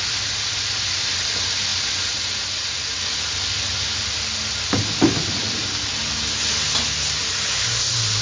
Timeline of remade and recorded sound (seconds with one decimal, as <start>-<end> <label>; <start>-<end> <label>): 0.0-8.2 recorded